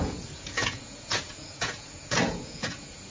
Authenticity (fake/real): fake